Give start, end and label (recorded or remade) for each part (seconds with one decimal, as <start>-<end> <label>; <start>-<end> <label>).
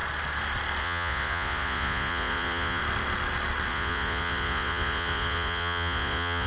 0.0-0.8 recorded; 0.8-2.8 remade; 2.8-3.7 recorded; 3.7-6.5 remade